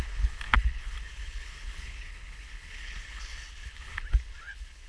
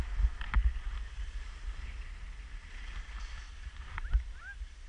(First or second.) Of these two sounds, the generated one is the first